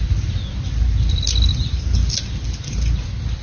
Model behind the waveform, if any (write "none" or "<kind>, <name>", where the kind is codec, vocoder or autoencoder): none